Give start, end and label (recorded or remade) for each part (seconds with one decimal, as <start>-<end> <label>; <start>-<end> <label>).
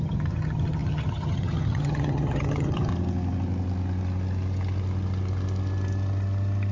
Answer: 0.0-2.9 remade; 2.9-6.7 recorded